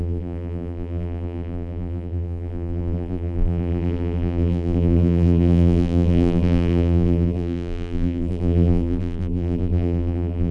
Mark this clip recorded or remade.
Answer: remade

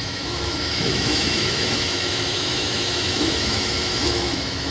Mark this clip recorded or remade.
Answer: remade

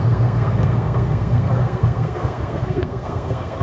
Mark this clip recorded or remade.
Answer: remade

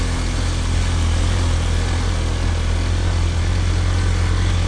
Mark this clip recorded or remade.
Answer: recorded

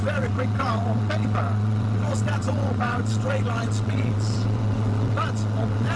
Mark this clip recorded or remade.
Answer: remade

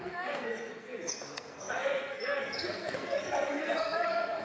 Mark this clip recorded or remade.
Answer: remade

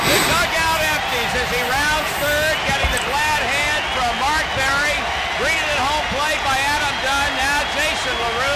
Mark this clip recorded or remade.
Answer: recorded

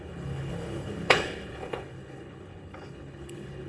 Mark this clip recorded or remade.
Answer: remade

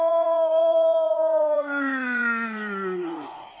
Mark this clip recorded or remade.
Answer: remade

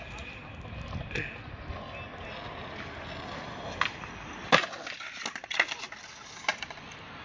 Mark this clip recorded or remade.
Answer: recorded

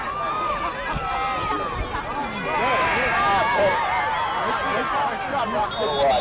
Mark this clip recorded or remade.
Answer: recorded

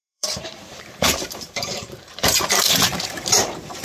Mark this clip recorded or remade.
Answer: remade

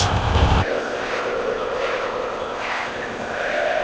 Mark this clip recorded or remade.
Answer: remade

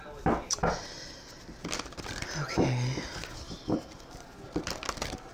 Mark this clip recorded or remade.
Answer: recorded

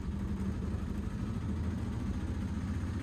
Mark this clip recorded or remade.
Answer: recorded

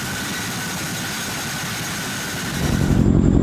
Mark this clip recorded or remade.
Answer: recorded